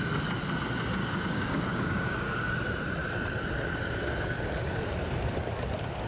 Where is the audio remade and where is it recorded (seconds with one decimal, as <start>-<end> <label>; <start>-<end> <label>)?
0.0-1.0 recorded; 1.0-2.5 remade; 2.5-6.1 recorded